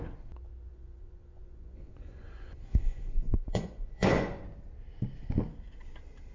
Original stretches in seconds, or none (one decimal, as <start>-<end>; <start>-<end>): 0.0-0.7; 4.4-6.3